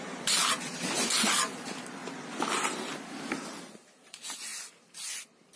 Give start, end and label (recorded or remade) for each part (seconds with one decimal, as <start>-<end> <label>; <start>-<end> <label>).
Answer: 0.0-5.6 remade